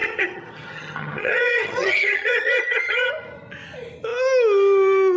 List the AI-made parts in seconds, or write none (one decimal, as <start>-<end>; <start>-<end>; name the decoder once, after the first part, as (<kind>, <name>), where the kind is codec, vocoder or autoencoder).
0.0-3.1 (vocoder, HiFi-GAN)